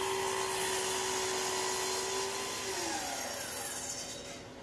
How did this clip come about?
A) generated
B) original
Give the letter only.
B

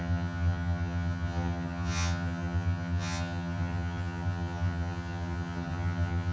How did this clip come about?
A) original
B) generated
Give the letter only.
B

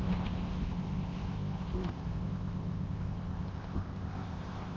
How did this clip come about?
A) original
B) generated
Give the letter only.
B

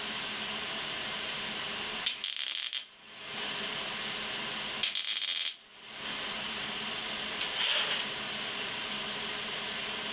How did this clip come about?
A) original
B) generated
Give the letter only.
A